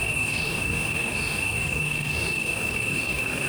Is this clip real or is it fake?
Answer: fake